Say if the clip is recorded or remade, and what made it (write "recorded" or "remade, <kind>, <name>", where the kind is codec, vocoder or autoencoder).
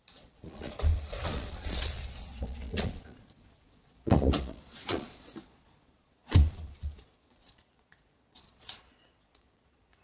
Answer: remade, vocoder, Vocos